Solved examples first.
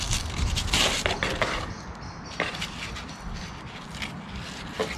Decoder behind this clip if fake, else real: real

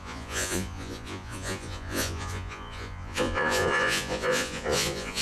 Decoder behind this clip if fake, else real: fake, vocoder, Vocos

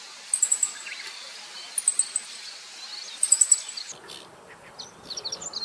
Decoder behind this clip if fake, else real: real